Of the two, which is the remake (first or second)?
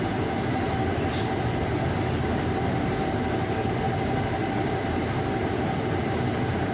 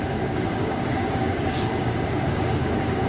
second